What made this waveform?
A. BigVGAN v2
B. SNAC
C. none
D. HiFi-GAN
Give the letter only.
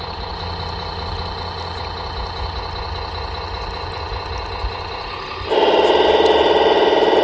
C